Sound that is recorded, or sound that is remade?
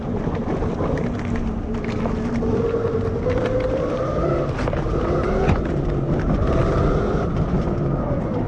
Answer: recorded